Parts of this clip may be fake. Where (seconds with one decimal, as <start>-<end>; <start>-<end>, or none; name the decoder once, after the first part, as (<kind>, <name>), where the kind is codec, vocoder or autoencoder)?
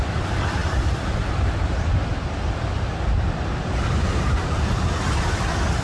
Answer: none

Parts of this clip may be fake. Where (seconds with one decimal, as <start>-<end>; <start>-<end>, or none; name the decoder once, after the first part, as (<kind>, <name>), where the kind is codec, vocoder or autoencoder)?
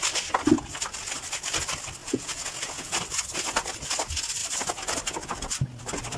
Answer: 2.0-2.9 (vocoder, Vocos)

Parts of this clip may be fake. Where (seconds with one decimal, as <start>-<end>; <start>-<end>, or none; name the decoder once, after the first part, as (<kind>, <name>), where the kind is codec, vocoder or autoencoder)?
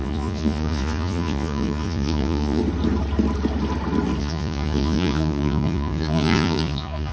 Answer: 0.0-2.6 (vocoder, Vocos); 4.2-7.1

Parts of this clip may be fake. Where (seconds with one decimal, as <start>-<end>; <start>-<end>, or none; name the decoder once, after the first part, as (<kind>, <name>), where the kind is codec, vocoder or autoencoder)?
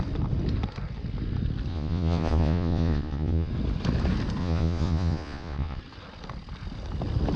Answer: 1.7-3.5 (vocoder, Vocos); 4.4-5.8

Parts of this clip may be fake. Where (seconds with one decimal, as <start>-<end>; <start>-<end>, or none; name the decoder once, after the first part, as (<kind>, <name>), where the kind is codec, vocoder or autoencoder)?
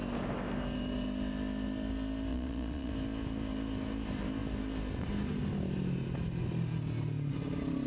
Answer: 2.3-2.9 (vocoder, Vocos)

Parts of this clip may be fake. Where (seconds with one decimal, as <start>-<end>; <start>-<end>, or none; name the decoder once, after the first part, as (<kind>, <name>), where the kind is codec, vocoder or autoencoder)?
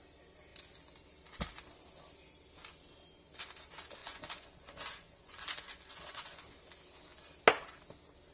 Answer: 4.0-6.4 (vocoder, Vocos)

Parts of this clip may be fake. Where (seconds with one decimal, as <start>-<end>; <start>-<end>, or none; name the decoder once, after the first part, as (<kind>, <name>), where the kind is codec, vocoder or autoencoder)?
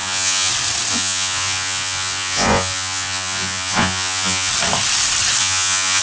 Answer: 0.0-0.5 (vocoder, Vocos); 0.9-4.5; 5.4-6.0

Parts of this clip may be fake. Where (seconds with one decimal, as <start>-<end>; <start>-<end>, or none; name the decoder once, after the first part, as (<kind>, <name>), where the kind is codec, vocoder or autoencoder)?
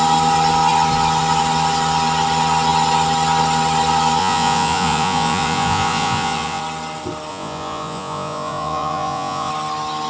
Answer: 4.2-6.6 (vocoder, Vocos); 7.3-9.5